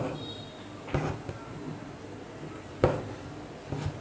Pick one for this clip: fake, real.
real